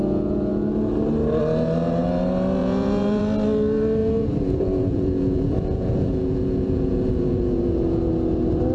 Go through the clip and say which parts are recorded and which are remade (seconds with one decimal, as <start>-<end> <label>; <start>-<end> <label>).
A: 0.0-2.6 recorded; 2.6-3.2 remade; 3.2-4.0 recorded; 4.0-8.1 remade; 8.1-8.7 recorded